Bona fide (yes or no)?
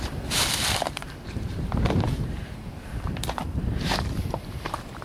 no